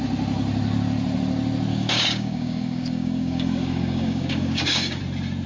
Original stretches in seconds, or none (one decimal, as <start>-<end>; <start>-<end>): 0.0-1.7; 5.0-5.5